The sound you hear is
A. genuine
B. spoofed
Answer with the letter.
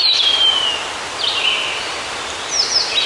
A